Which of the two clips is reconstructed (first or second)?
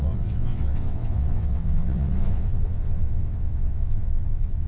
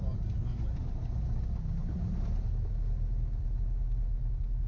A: first